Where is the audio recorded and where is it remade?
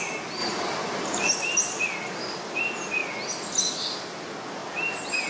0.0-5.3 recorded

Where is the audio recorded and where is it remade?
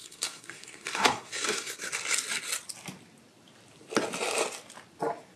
0.0-1.9 remade; 1.9-5.4 recorded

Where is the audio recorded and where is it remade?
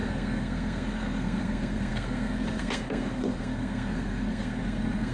0.0-5.1 remade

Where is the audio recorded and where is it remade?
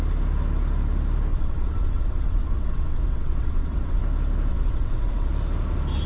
0.0-1.3 recorded; 1.3-4.0 remade; 4.0-4.5 recorded; 4.5-5.3 remade; 5.3-6.1 recorded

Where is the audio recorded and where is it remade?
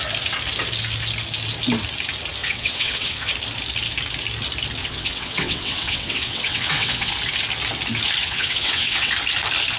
0.0-2.4 recorded; 2.4-3.3 remade; 3.3-4.8 recorded; 4.8-7.1 remade; 7.1-8.2 recorded; 8.2-9.1 remade; 9.1-9.8 recorded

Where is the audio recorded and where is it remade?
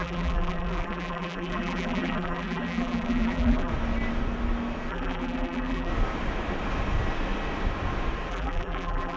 0.0-3.7 remade; 3.7-4.9 recorded; 4.9-5.9 remade; 5.9-8.3 recorded; 8.3-9.2 remade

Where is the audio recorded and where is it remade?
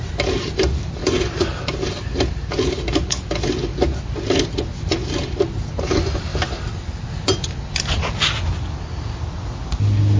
0.0-10.2 recorded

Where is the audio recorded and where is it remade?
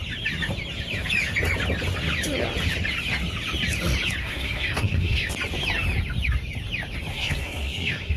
0.0-4.2 recorded; 4.2-5.3 remade; 5.3-7.1 recorded; 7.1-8.2 remade